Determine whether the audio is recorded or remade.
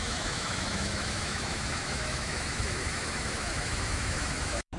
remade